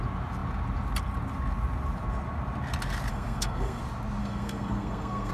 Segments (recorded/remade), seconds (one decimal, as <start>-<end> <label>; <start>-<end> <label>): 0.0-3.1 recorded; 3.1-3.8 remade; 3.8-4.2 recorded; 4.2-5.3 remade